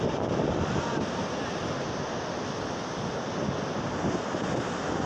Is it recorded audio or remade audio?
recorded